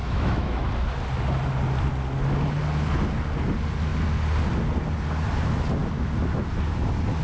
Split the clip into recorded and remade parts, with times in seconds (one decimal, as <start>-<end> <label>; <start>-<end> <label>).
0.0-0.7 remade; 0.7-7.2 recorded